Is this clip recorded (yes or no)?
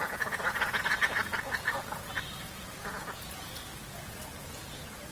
no